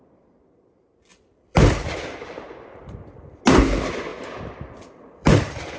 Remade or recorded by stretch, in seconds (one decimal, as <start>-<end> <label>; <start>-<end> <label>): 0.0-1.1 recorded; 1.1-3.4 remade; 3.4-4.1 recorded; 4.1-5.8 remade